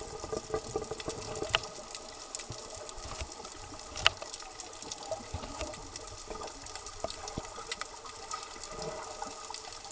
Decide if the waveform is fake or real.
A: real